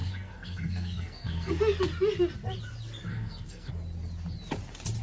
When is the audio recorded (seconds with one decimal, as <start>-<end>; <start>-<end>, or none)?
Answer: 1.6-3.1; 3.7-5.0